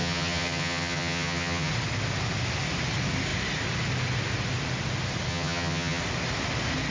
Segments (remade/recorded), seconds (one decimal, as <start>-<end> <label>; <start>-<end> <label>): 0.0-1.7 remade; 1.7-5.3 recorded; 5.3-6.0 remade; 6.0-6.9 recorded